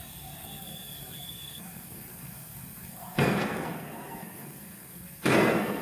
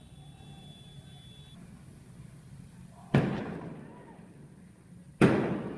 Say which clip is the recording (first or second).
second